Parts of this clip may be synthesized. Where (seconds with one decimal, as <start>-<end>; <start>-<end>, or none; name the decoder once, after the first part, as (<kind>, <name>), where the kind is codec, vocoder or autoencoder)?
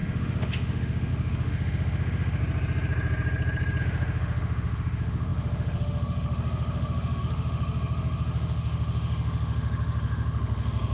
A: 0.0-2.4 (autoencoder, DAC-VAE); 3.8-10.9